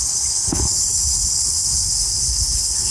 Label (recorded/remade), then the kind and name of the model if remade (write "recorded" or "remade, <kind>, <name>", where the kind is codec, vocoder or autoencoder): remade, codec, HILCodec